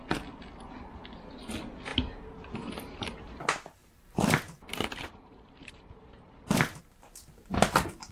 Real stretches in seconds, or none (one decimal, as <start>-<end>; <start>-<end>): 0.0-1.9; 6.8-8.1